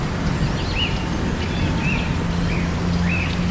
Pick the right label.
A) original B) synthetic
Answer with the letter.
A